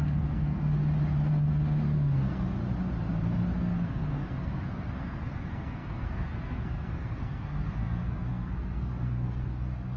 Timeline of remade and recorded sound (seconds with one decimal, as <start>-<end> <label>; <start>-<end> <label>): 0.0-0.8 remade; 0.8-1.3 recorded; 1.3-2.6 remade; 2.6-3.6 recorded; 3.6-10.0 remade